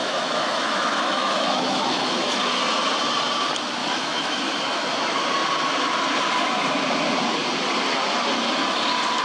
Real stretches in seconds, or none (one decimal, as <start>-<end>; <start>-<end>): 2.4-3.8; 4.9-9.2